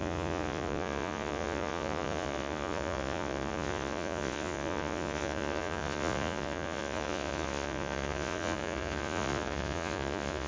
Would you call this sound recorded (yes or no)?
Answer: no